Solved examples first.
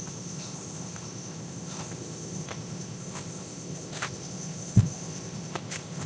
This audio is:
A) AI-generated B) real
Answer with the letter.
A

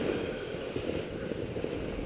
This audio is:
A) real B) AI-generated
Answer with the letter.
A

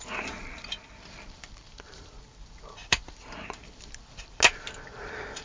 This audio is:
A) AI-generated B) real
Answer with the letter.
B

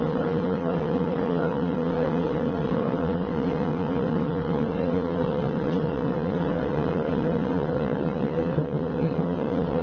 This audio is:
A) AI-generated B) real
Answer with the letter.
A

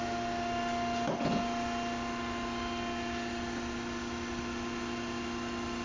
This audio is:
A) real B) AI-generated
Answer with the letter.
A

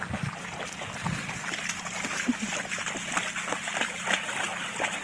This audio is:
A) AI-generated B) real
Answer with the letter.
B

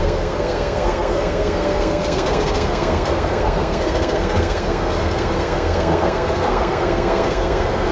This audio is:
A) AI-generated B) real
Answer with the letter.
A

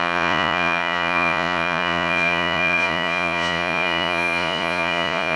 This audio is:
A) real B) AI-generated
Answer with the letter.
B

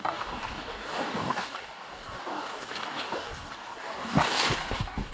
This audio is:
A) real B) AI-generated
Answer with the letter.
B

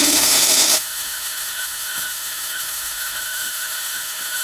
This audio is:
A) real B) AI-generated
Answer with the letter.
B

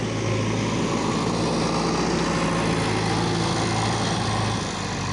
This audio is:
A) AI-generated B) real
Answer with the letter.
B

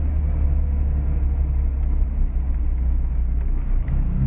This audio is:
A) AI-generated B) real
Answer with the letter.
B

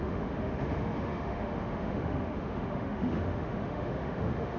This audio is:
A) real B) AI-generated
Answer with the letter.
B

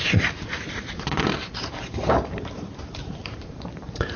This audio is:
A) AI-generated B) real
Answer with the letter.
A